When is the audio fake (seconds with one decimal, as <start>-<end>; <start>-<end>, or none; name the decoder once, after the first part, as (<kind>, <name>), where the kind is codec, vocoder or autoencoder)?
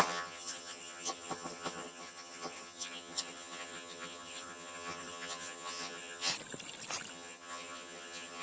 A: 0.0-6.3 (vocoder, HiFi-GAN); 7.1-8.4